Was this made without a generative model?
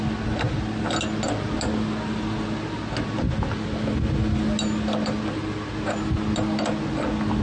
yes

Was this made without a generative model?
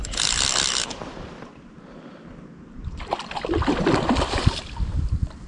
no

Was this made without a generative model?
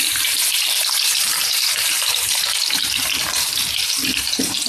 no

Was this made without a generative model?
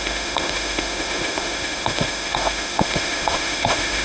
no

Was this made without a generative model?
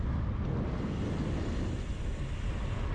yes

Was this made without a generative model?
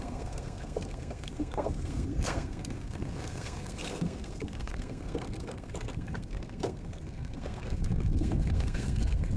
no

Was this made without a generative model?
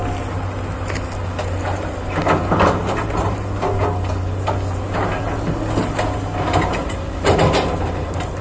yes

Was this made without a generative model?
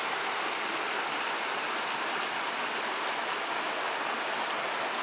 yes